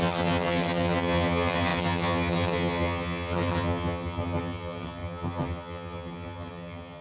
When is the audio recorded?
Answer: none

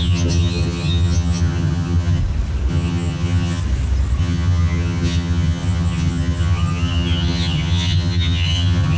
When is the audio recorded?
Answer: 2.2-2.7; 3.6-4.2

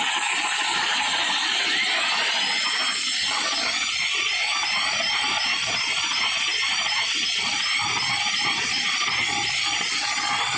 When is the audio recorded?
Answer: 0.0-10.6

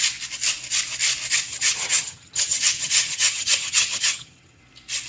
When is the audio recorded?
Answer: 0.0-1.5; 4.6-5.1